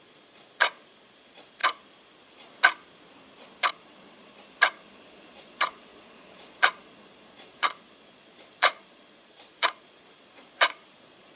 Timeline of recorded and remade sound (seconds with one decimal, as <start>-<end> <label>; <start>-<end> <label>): 0.0-1.6 remade; 1.6-3.7 recorded; 3.7-4.3 remade; 4.3-5.0 recorded; 5.0-11.4 remade